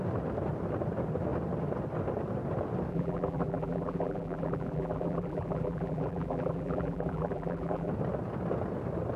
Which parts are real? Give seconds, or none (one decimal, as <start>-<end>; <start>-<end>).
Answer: 0.0-2.9; 7.9-9.2